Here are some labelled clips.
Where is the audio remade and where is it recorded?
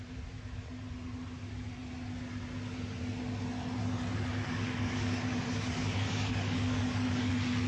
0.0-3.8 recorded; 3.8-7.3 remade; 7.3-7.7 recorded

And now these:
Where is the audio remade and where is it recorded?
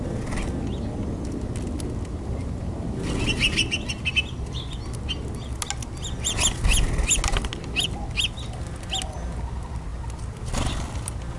0.0-11.4 recorded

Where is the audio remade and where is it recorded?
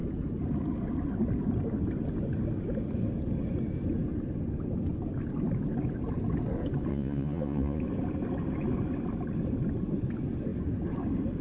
0.0-6.9 recorded; 6.9-7.8 remade; 7.8-11.4 recorded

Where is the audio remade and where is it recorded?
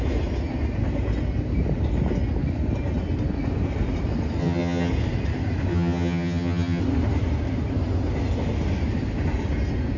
0.0-4.4 recorded; 4.4-4.9 remade; 4.9-5.7 recorded; 5.7-6.8 remade; 6.8-10.0 recorded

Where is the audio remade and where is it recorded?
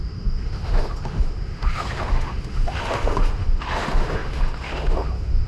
0.0-5.5 remade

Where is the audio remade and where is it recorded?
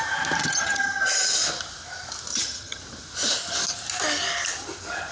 0.0-0.4 recorded; 0.4-1.3 remade; 1.3-2.3 recorded; 2.3-2.8 remade; 2.8-5.1 recorded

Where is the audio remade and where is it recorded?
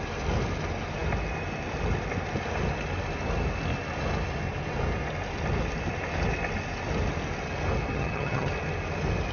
0.0-7.9 recorded; 7.9-8.5 remade; 8.5-9.3 recorded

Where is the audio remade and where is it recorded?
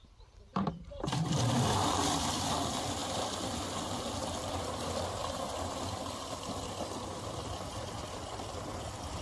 0.0-3.0 remade; 3.0-4.6 recorded; 4.6-5.2 remade; 5.2-5.7 recorded; 5.7-9.2 remade